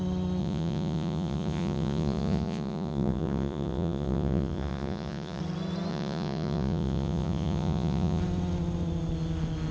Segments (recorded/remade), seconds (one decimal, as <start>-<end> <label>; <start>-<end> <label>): 0.0-0.4 recorded; 0.4-5.4 remade; 5.4-5.9 recorded; 5.9-8.2 remade; 8.2-9.7 recorded